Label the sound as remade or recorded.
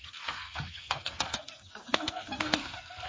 remade